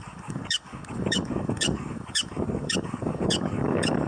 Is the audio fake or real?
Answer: fake